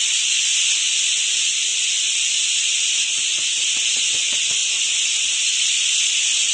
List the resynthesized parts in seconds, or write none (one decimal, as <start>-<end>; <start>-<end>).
4.6-5.2